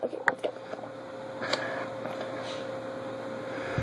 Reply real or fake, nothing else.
real